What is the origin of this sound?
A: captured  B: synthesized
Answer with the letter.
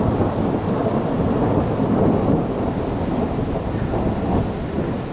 A